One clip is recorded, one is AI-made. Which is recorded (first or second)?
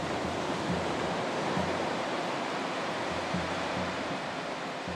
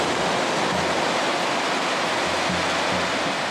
second